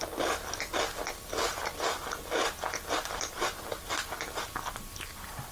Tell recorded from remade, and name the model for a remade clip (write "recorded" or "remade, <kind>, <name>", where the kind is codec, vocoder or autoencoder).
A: recorded